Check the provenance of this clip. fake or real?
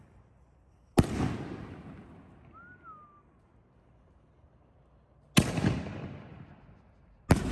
real